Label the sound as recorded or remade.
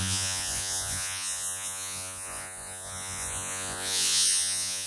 remade